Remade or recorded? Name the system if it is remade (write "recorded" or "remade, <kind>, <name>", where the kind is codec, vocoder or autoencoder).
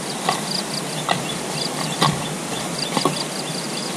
recorded